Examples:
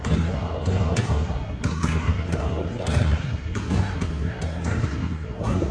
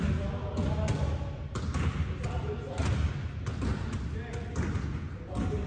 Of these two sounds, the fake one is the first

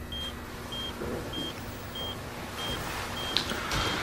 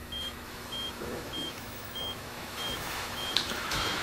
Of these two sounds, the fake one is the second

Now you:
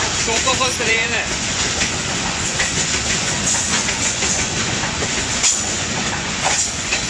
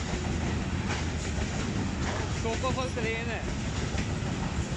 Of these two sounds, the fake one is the first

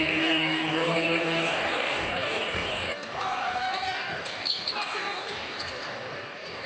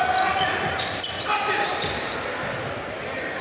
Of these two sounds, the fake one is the first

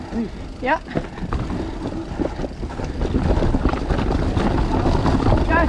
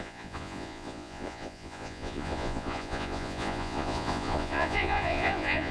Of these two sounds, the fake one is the second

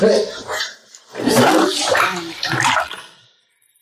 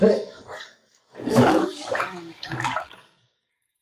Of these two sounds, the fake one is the second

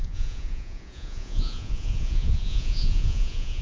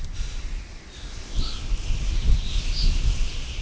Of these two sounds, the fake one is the first